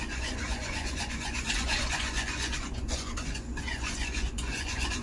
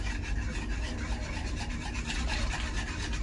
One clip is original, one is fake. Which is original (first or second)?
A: second